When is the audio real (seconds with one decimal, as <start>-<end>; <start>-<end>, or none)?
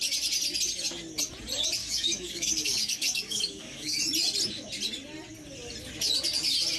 0.0-1.8; 4.0-6.8